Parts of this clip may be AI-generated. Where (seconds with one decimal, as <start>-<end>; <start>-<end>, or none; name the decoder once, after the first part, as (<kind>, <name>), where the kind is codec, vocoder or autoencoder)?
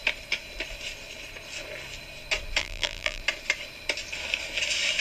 2.6-3.2 (vocoder, BigVGAN v2)